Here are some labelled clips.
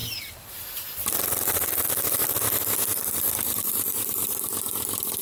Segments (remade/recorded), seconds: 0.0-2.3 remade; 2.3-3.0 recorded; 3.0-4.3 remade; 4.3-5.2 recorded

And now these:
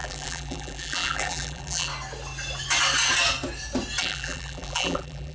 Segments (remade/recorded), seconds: 0.0-1.9 remade; 1.9-4.0 recorded; 4.0-5.3 remade

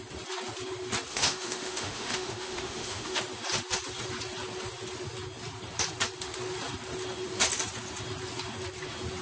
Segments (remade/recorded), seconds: 0.0-1.1 recorded; 1.1-3.2 remade; 3.2-9.2 recorded

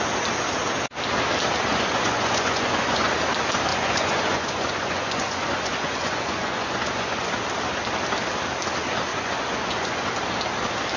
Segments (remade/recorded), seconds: 0.0-1.7 recorded; 1.7-3.1 remade; 3.1-3.7 recorded; 3.7-7.3 remade; 7.3-9.1 recorded; 9.1-10.1 remade; 10.1-11.0 recorded

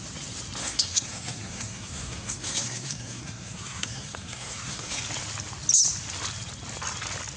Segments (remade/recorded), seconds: 0.0-0.6 recorded; 0.6-5.0 remade; 5.0-7.4 recorded